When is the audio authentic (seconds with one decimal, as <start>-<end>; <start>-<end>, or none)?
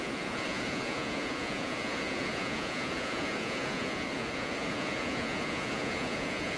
none